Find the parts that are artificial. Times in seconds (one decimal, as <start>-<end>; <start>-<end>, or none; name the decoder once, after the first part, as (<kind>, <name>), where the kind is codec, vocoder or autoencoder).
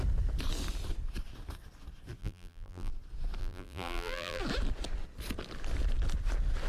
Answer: 2.2-2.9 (vocoder, BigVGAN v2); 3.4-4.4